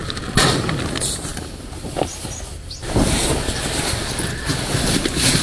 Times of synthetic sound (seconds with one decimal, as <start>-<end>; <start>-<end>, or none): none